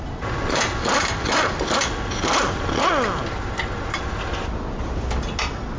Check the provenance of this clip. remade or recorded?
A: recorded